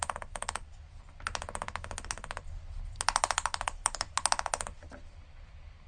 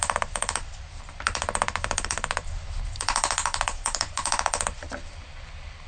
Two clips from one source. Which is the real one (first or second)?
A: first